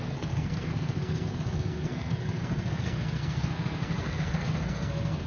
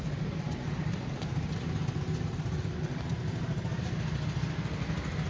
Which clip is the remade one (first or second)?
first